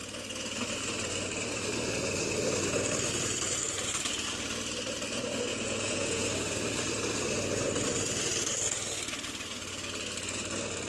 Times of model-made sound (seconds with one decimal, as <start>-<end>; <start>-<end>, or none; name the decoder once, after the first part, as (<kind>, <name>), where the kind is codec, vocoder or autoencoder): 5.5-6.2 (vocoder, Vocos)